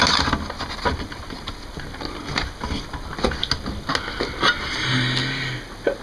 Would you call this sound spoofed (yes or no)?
no